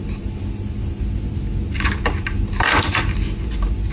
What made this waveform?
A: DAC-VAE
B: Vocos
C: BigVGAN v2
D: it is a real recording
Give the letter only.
D